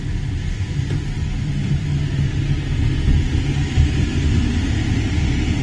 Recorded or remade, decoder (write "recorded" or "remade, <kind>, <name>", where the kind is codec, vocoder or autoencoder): recorded